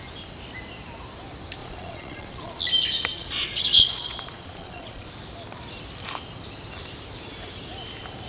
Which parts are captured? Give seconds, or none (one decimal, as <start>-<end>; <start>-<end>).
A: 0.0-1.6; 2.6-3.1; 5.1-8.3